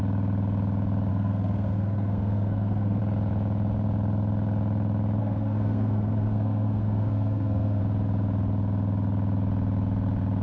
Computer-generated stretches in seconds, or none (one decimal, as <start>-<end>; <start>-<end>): 1.1-3.0; 5.2-7.8